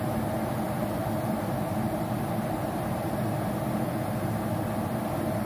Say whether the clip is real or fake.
real